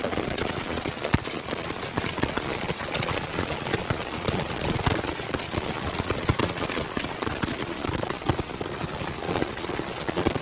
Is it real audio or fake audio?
fake